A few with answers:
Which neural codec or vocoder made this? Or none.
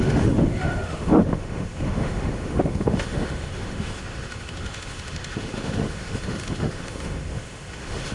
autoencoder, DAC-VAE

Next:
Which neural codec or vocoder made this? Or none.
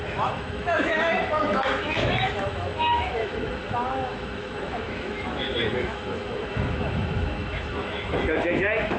autoencoder, DAC-VAE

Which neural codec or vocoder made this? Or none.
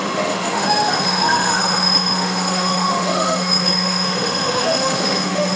autoencoder, DAC-VAE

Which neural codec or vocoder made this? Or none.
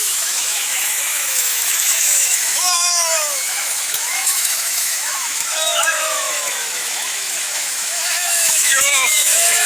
autoencoder, DAC-VAE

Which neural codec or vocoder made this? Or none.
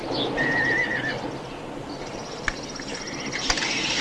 none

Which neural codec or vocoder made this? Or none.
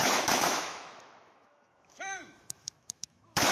autoencoder, DAC-VAE